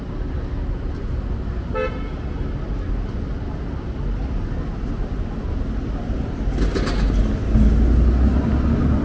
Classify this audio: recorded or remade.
recorded